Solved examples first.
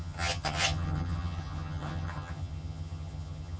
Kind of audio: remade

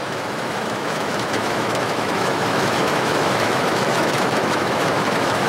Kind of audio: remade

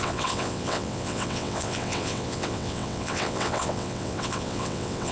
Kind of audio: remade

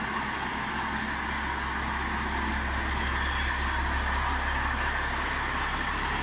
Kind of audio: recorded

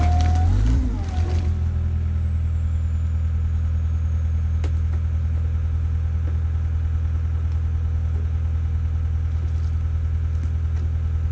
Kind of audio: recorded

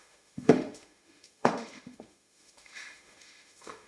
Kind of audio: remade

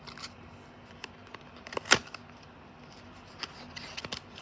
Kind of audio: recorded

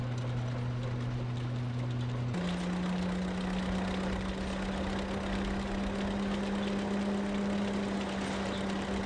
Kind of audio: recorded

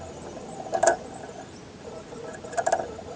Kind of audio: recorded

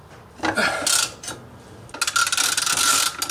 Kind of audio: recorded